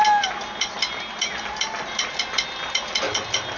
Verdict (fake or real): real